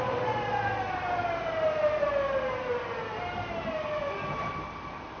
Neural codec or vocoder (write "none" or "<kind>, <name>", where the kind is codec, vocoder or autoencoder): none